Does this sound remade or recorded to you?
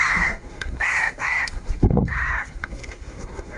remade